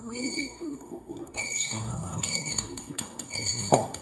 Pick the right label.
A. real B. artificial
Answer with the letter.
B